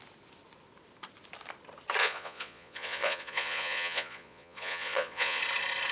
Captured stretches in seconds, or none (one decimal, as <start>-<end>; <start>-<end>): 0.0-2.0; 5.4-5.9